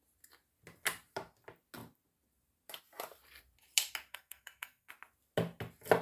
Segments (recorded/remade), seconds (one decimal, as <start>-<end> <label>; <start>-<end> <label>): 0.0-4.1 recorded; 4.1-4.9 remade; 4.9-6.0 recorded